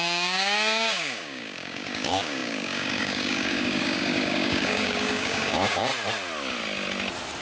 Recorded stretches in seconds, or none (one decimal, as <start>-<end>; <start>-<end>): 5.9-7.4